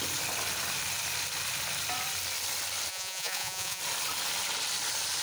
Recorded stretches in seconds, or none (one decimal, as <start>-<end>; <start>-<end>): 0.0-2.9; 3.8-5.2